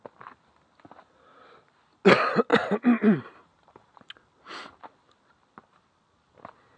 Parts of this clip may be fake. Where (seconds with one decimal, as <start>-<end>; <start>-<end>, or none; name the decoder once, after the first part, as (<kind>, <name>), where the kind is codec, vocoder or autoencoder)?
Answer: 2.5-4.1 (vocoder, BigVGAN v2)